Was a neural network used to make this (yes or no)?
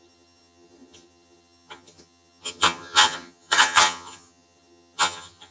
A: yes